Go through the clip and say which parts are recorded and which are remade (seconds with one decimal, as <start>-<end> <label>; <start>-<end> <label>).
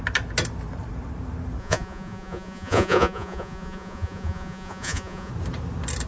0.0-1.6 recorded; 1.6-5.3 remade; 5.3-6.1 recorded